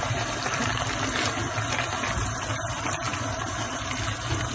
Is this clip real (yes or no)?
yes